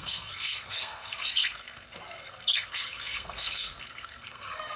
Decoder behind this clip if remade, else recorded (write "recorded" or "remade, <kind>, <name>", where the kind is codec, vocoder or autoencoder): remade, codec, SNAC